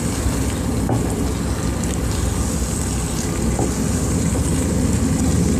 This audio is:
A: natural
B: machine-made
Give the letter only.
A